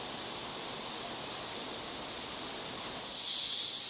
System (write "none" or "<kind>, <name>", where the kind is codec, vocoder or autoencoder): none